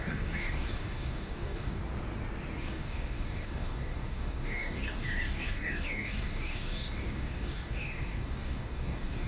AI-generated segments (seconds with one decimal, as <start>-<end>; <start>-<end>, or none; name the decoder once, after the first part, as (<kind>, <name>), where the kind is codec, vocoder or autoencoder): 0.0-1.8 (codec, DAC); 2.6-9.3

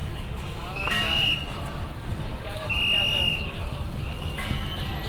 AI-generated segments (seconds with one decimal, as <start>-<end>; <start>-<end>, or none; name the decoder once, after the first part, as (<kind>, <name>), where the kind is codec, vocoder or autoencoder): 0.0-1.3 (codec, DAC); 2.1-2.8; 3.3-4.5

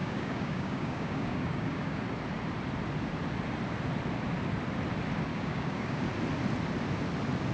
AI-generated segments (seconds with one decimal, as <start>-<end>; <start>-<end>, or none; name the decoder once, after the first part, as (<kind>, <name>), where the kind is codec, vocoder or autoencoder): 0.0-2.0 (codec, DAC); 5.3-6.1